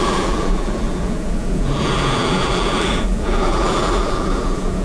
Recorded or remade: remade